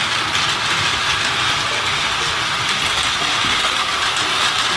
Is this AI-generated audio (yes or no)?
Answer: no